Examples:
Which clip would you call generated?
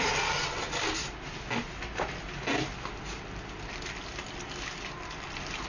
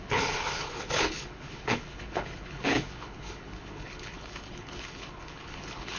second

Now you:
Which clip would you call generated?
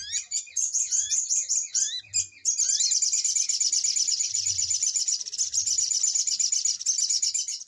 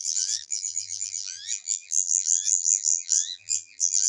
second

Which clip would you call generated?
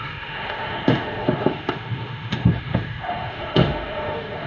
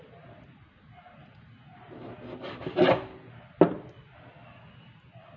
first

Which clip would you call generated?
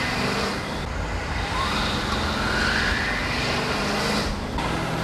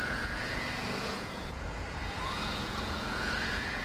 second